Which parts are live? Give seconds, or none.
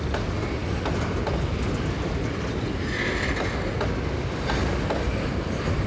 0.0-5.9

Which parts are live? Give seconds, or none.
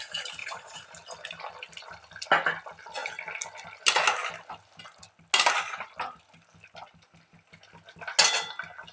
0.0-0.4; 0.9-8.9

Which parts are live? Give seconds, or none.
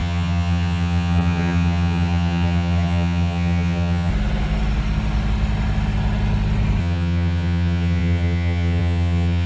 4.1-6.8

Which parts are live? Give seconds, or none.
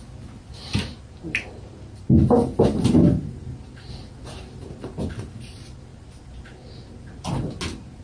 0.0-8.0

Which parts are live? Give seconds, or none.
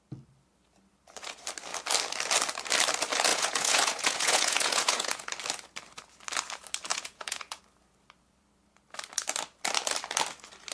0.0-3.3; 5.3-6.9; 7.6-10.7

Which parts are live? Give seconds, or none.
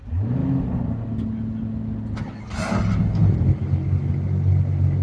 0.0-5.0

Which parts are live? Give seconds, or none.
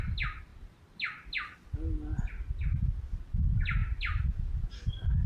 0.0-5.3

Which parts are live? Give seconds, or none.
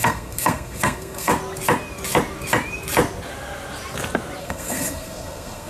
1.3-4.4